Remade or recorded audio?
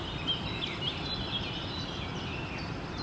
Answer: recorded